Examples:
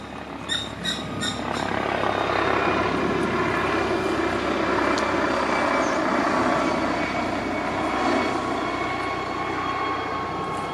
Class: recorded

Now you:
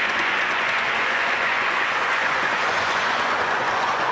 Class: remade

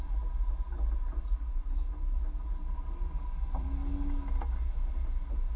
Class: recorded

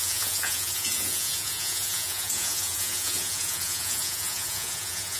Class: remade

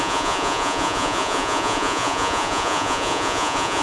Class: remade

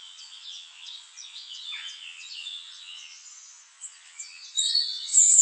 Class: remade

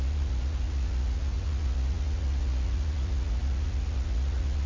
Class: remade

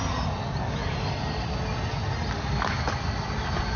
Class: recorded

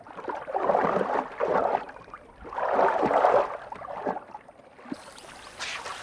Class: recorded